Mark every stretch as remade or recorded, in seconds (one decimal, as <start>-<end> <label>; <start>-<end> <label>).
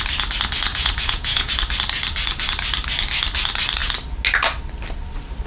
0.0-0.7 recorded; 0.7-1.5 remade; 1.5-5.5 recorded